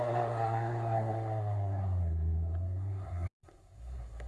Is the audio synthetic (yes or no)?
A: yes